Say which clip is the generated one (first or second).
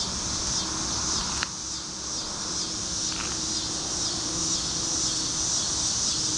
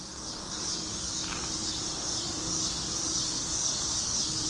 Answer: second